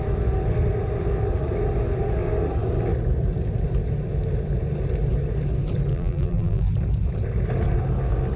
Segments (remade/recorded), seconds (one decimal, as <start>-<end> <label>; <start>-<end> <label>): 0.0-5.9 recorded; 5.9-6.7 remade; 6.7-8.4 recorded